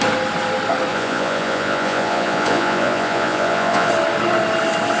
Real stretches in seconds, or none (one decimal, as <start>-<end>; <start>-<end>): 0.0-0.9; 3.9-5.0